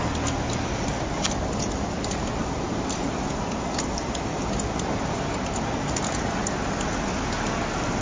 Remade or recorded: recorded